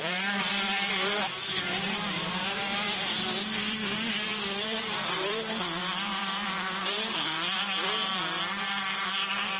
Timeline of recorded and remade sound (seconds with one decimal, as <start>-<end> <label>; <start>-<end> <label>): 0.0-2.6 remade; 2.6-4.1 recorded; 4.1-8.1 remade; 8.1-8.6 recorded; 8.6-9.6 remade